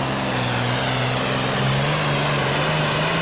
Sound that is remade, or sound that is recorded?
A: recorded